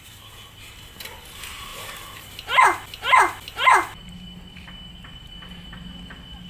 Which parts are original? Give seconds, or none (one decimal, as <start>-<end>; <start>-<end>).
0.0-6.5